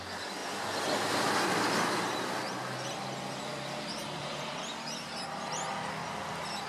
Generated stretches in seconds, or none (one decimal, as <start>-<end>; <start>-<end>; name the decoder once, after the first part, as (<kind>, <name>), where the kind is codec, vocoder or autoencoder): none